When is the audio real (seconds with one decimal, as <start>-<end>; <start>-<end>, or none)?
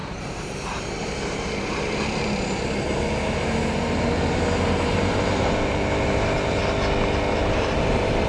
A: 6.6-7.3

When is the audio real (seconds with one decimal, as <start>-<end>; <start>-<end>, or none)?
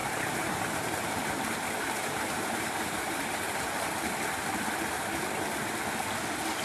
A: 4.0-6.6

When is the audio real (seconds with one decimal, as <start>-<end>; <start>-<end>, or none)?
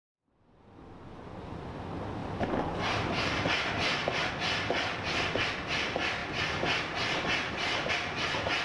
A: 0.0-2.2; 4.3-8.6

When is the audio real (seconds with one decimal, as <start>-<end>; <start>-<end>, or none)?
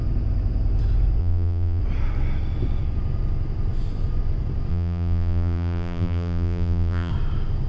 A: 0.0-1.2; 1.8-4.7; 7.1-7.7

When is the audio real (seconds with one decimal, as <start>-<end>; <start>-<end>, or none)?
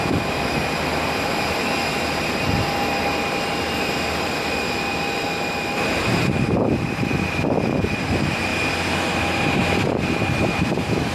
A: 8.5-10.0